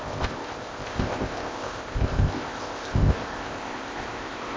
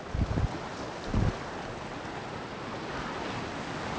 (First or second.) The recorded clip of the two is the second